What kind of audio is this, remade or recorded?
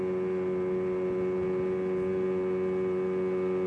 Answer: recorded